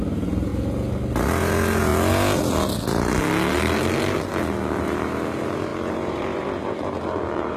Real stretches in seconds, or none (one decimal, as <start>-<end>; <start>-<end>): 0.5-1.3; 1.9-4.8